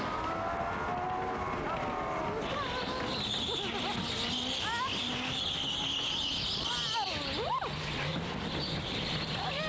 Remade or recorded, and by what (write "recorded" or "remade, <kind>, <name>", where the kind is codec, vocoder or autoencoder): recorded